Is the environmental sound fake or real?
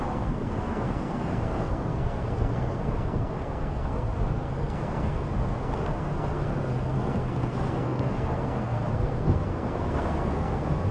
fake